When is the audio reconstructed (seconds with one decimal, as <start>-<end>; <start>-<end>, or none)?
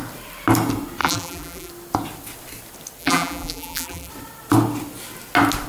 1.0-1.7; 3.0-4.1